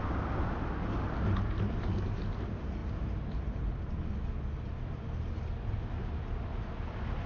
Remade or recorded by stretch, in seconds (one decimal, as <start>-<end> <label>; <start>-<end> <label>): 0.0-7.3 recorded